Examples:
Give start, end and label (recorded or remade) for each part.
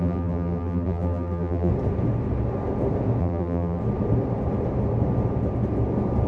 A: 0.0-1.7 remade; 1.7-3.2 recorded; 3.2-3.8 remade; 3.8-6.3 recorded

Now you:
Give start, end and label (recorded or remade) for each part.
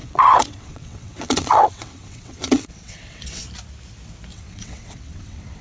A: 0.0-3.4 remade; 3.4-4.3 recorded; 4.3-5.6 remade